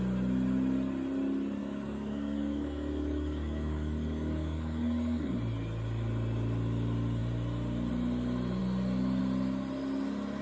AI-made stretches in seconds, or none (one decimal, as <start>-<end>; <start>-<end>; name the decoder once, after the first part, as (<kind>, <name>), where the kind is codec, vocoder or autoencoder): 1.6-5.3 (codec, DAC)